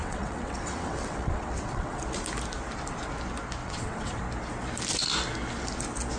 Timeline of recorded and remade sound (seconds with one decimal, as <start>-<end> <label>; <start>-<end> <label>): 0.0-2.0 remade; 2.0-3.6 recorded; 3.6-4.2 remade; 4.2-6.2 recorded